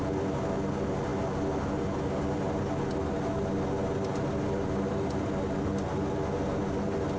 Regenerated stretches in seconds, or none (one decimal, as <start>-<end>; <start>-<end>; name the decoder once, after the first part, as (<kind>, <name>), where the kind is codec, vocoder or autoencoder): none